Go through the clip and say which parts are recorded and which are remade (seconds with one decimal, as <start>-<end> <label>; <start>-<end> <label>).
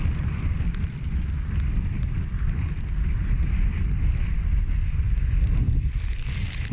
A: 0.0-6.7 recorded